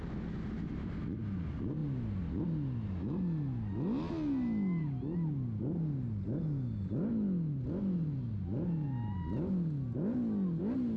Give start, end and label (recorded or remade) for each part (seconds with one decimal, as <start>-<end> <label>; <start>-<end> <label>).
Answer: 0.0-11.0 recorded